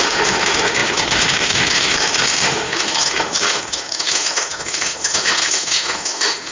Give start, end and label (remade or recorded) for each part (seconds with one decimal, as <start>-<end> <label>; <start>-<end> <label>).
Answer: 0.0-6.5 remade